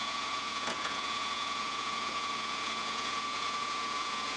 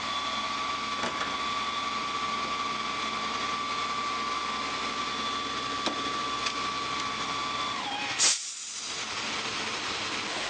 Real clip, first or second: second